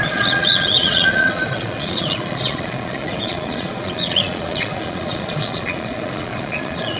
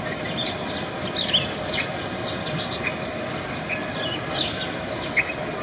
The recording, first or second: second